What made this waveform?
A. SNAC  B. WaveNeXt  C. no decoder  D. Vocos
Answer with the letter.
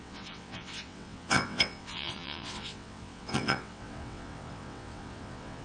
B